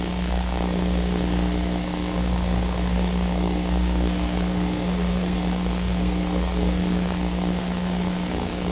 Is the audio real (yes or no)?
no